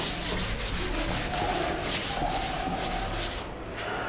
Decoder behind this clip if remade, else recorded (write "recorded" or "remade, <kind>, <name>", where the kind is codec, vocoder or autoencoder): recorded